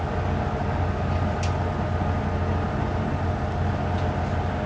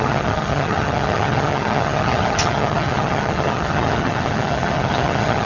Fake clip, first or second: second